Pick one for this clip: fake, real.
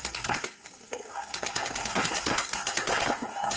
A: fake